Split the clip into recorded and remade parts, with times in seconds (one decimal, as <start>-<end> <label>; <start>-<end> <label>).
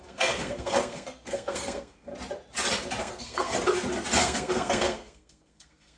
0.0-2.1 remade; 2.1-3.0 recorded; 3.0-3.5 remade; 3.5-4.2 recorded; 4.2-6.0 remade